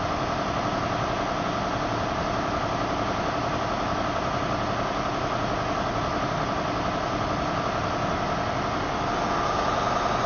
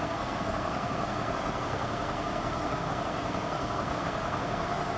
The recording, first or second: first